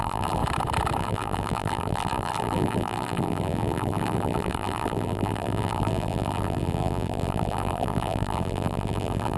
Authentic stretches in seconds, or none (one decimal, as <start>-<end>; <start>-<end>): 0.4-1.0